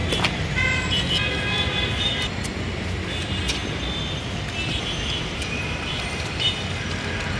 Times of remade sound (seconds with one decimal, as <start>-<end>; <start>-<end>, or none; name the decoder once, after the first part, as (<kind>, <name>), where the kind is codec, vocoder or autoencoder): 3.6-6.4 (vocoder, BigVGAN v2)